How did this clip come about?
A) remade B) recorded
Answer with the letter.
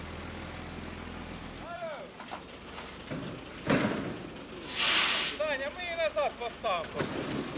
B